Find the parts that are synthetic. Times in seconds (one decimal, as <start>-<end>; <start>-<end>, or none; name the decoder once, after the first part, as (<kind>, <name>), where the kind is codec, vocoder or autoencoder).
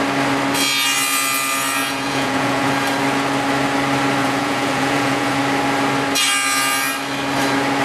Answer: 1.8-2.7 (vocoder, Vocos); 4.2-5.4